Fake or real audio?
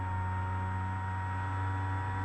real